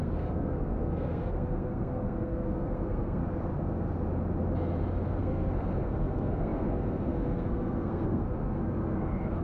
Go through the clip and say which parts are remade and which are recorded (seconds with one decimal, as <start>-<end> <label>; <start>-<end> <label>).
0.0-3.2 remade; 3.2-5.2 recorded; 5.2-9.4 remade